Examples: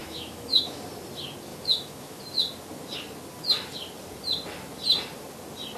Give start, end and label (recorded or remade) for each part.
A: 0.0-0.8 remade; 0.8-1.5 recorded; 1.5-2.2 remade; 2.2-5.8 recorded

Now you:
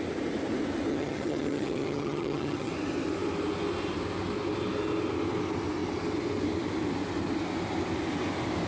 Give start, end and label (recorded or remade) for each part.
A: 0.0-0.9 recorded; 0.9-2.7 remade; 2.7-8.7 recorded

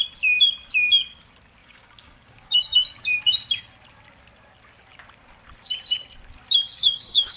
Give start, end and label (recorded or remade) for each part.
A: 0.0-1.6 recorded; 1.6-3.0 remade; 3.0-6.7 recorded; 6.7-7.4 remade

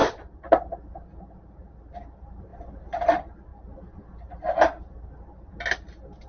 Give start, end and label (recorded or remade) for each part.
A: 0.0-6.3 recorded